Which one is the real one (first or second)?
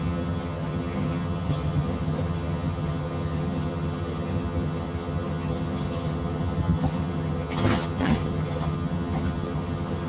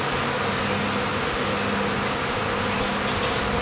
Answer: second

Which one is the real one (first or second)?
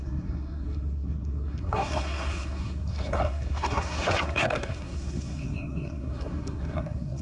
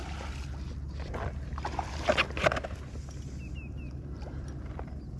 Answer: second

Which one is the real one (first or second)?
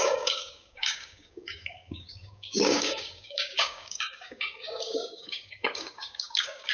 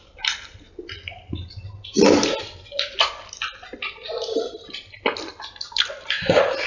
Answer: second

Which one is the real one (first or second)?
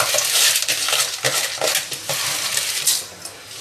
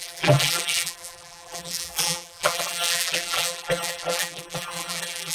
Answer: first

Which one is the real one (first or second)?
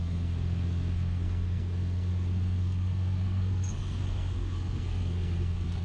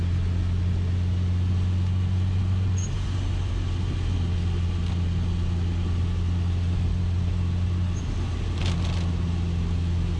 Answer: second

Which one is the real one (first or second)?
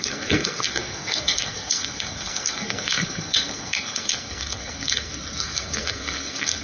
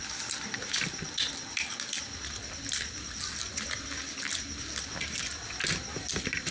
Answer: second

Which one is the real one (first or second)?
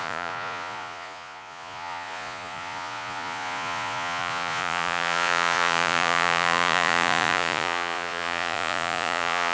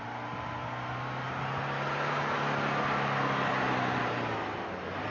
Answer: second